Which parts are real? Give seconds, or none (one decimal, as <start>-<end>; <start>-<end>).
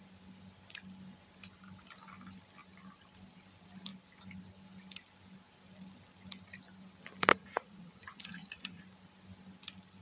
0.0-7.3; 8.8-10.0